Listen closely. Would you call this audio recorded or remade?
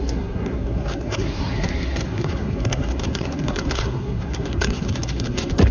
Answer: remade